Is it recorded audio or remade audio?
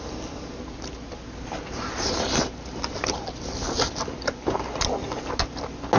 recorded